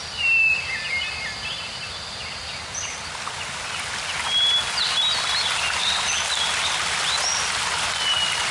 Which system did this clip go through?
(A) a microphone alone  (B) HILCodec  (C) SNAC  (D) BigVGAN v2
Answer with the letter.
A